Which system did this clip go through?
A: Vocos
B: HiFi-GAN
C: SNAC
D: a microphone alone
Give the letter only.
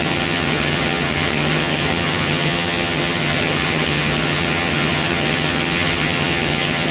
B